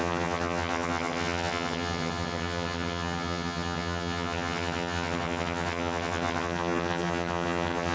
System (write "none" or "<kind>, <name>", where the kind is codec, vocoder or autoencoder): vocoder, HiFi-GAN